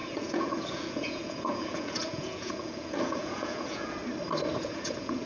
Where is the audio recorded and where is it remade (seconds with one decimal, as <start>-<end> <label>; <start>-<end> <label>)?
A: 0.0-4.0 remade; 4.0-4.6 recorded; 4.6-5.3 remade